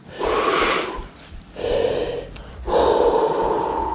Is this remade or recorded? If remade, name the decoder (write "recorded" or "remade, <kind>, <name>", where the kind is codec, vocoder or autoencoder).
recorded